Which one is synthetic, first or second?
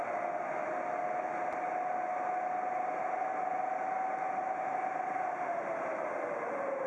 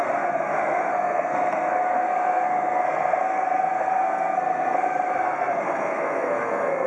second